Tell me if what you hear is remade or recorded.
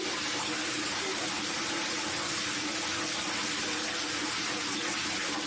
recorded